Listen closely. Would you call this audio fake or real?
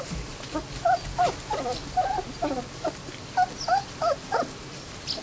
real